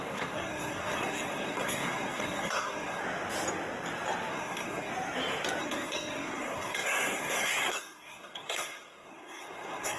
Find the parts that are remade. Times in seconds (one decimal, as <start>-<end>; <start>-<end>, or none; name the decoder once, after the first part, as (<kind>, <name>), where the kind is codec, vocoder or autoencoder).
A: 0.0-3.0 (codec, SNAC); 4.3-4.9; 5.6-10.0